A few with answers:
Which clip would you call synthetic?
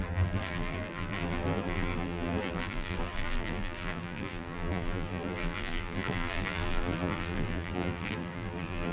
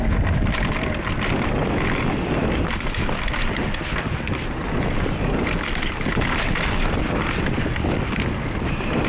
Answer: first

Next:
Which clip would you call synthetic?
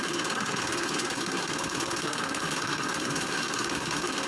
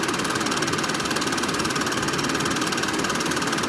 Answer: first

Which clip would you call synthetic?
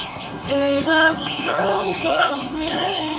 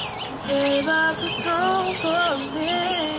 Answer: first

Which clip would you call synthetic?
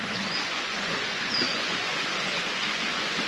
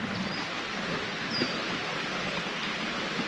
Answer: first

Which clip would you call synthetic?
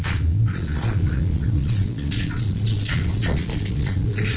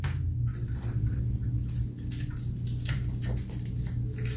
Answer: first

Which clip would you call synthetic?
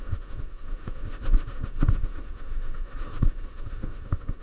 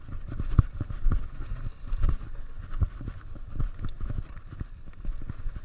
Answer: first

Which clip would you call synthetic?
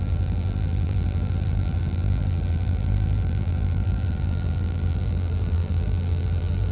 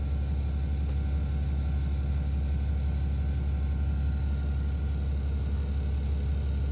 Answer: first